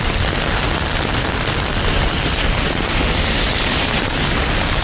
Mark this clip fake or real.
real